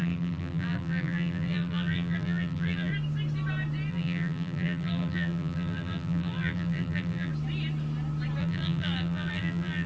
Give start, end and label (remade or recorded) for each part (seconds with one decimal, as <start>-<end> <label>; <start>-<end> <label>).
0.0-2.9 remade; 2.9-3.9 recorded; 3.9-7.3 remade; 7.3-8.4 recorded; 8.4-9.9 remade